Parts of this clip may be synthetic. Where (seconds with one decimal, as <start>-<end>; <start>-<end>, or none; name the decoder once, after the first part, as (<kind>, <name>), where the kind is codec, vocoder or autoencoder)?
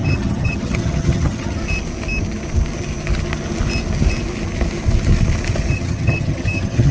0.0-1.6 (vocoder, HiFi-GAN); 5.7-6.9